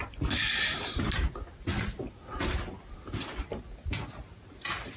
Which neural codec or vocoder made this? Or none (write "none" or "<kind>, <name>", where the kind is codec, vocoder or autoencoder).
none